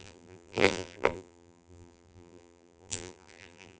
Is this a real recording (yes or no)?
no